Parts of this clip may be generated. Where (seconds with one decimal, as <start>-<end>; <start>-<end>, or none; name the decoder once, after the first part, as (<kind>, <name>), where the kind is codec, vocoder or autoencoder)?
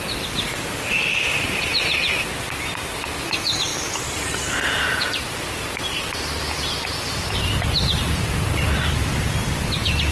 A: 3.7-5.5 (vocoder, BigVGAN v2)